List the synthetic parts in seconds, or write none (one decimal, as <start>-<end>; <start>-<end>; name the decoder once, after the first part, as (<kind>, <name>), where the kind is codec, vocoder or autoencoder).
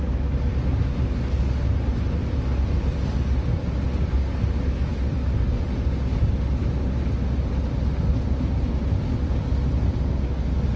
2.2-6.3 (vocoder, BigVGAN v2); 8.1-10.1